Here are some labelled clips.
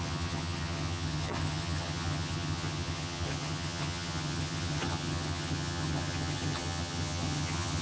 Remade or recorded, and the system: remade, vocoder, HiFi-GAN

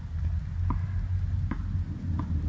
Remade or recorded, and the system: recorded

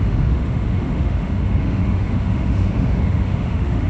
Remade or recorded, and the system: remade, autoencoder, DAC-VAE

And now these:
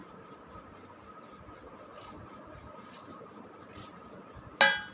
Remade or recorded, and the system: recorded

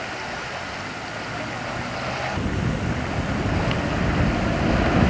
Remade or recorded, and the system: recorded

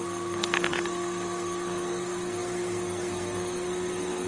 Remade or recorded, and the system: remade, codec, SNAC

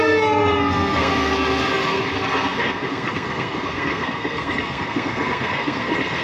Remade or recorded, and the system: remade, codec, SNAC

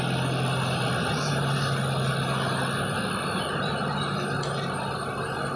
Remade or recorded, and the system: recorded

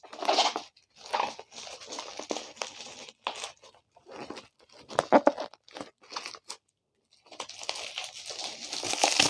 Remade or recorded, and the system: recorded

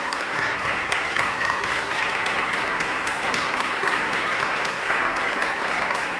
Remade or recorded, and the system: remade, codec, SNAC